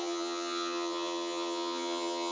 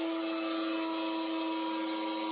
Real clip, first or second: second